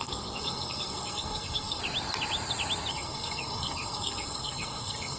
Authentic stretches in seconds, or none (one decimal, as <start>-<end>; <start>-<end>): 1.8-2.9